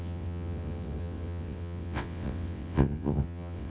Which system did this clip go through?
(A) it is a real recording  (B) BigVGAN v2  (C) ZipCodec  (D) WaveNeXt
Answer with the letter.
D